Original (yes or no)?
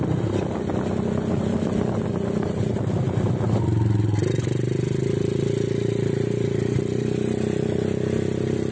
yes